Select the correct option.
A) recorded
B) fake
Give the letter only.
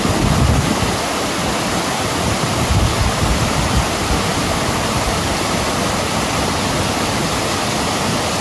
A